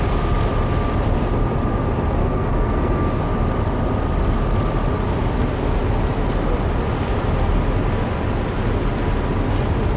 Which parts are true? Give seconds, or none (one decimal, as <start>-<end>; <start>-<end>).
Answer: 0.0-2.2; 3.2-10.0